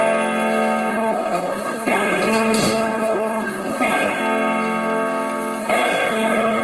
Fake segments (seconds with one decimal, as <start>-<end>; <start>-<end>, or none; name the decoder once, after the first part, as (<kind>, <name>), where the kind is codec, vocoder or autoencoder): 0.9-4.2 (codec, SNAC); 5.6-6.6